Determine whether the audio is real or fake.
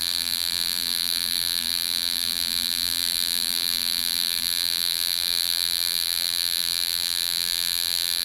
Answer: fake